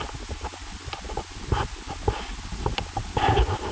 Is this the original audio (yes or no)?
yes